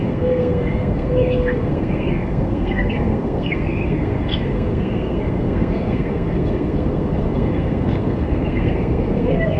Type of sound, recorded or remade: remade